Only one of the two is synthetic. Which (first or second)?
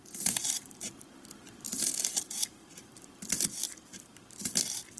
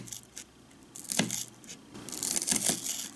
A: first